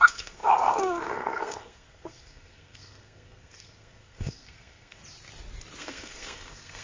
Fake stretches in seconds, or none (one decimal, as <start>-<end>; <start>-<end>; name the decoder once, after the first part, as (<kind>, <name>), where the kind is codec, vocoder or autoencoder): 0.0-5.0 (codec, SNAC); 5.8-6.8